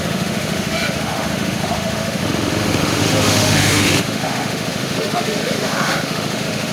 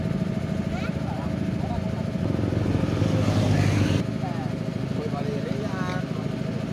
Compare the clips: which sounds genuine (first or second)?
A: second